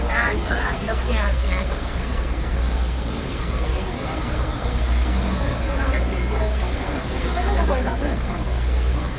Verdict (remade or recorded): remade